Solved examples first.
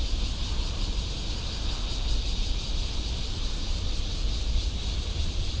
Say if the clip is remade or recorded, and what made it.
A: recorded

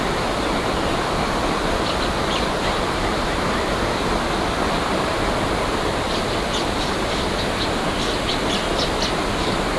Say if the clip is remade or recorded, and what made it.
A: recorded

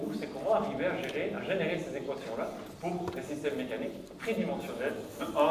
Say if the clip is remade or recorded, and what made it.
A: recorded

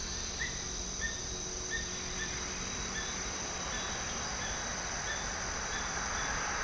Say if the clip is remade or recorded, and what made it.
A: recorded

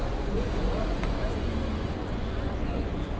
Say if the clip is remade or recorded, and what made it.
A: remade, vocoder, Vocos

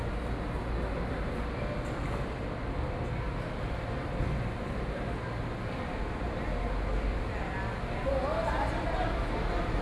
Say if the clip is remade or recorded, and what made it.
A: recorded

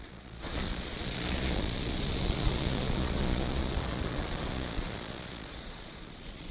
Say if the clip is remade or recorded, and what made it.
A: remade, vocoder, Vocos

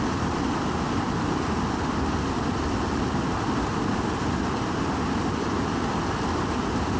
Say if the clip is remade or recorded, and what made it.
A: recorded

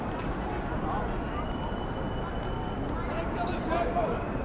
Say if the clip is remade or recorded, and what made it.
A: recorded